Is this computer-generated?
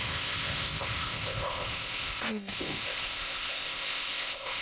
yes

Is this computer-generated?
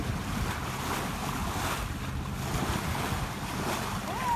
no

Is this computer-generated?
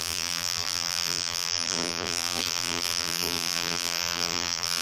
yes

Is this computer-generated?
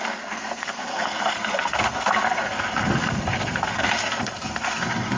yes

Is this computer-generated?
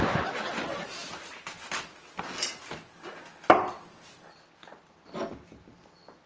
no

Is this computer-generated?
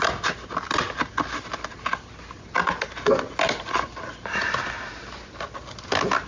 no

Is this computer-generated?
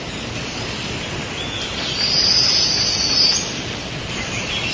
no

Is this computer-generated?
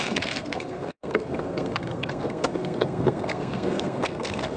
yes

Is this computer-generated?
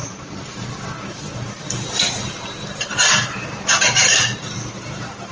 yes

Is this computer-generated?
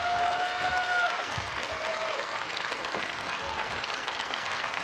yes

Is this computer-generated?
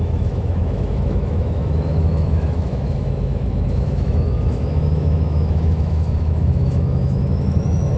yes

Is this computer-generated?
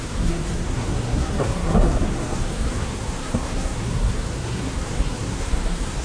yes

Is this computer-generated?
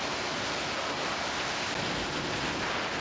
no